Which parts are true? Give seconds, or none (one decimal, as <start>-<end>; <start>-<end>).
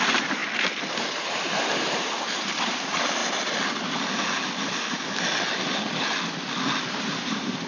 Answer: 0.4-1.3; 3.2-6.8